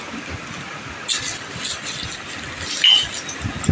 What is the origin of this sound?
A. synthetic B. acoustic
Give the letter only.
B